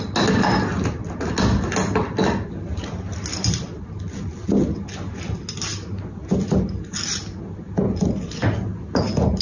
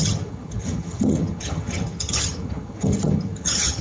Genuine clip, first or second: first